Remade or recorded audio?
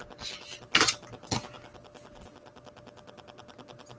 recorded